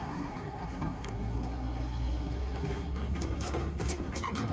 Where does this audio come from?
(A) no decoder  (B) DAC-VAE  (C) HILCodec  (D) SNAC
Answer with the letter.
D